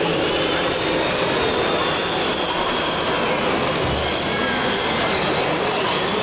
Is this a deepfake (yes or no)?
no